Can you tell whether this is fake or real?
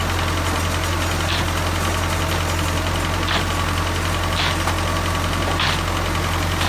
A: real